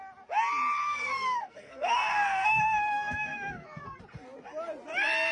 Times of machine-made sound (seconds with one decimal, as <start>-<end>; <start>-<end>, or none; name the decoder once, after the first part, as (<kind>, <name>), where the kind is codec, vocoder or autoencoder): 0.8-4.0 (codec, SNAC)